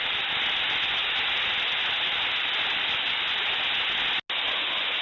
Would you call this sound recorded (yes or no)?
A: yes